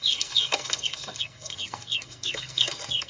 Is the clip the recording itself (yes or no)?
no